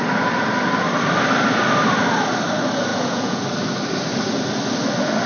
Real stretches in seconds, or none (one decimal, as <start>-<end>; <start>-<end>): 0.0-2.9; 3.4-5.3